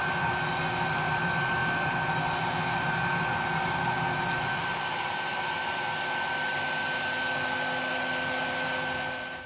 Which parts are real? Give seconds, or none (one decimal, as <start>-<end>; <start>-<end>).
0.0-9.5